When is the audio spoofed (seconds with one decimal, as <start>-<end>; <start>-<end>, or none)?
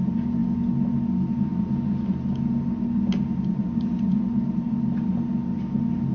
none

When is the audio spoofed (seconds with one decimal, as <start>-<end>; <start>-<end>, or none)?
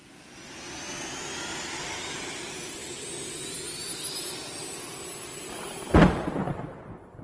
none